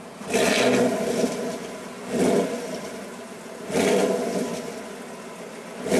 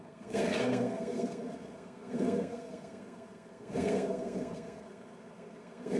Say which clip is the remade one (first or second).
second